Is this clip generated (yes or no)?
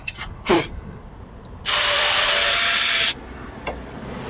yes